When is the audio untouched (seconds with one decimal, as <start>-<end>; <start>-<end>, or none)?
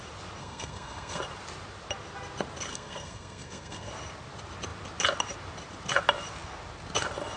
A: 0.0-0.4; 1.2-2.7; 3.9-7.4